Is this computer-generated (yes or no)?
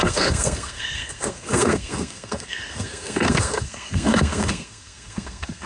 yes